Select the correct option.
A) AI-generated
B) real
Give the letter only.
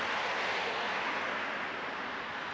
B